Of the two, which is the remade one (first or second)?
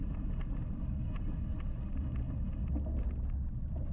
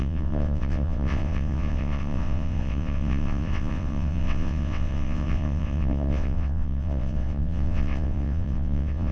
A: second